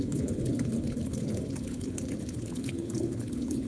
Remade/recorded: remade